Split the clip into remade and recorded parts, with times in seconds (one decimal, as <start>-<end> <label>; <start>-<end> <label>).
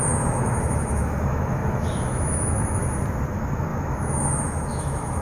0.0-2.8 remade; 2.8-3.3 recorded; 3.3-5.2 remade